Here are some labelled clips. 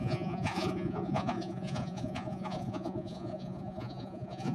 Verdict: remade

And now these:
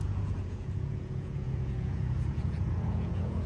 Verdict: remade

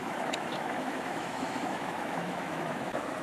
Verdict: remade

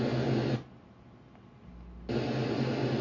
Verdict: recorded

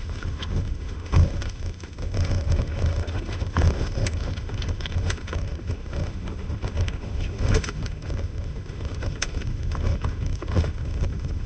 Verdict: remade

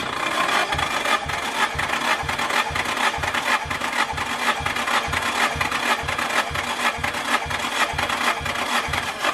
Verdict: recorded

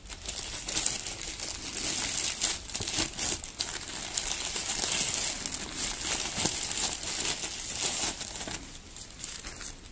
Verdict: recorded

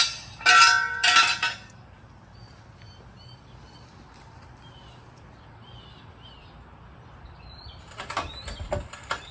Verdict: recorded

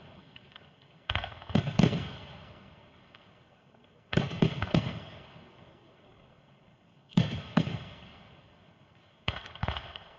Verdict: remade